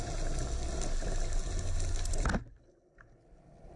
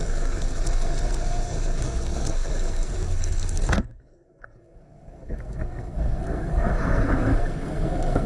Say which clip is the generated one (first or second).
second